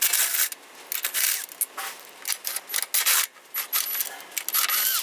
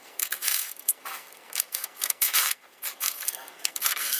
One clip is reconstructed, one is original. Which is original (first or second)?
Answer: first